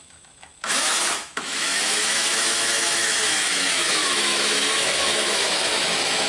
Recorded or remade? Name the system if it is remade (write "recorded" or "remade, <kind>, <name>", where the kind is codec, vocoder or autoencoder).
remade, autoencoder, DAC-VAE